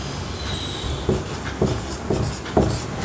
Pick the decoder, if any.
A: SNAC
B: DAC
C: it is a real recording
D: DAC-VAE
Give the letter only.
C